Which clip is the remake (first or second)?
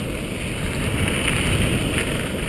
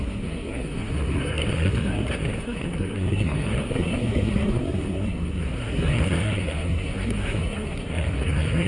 second